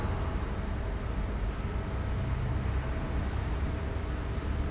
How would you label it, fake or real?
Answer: real